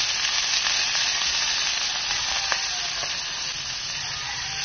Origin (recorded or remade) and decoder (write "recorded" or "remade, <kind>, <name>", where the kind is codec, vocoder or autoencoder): recorded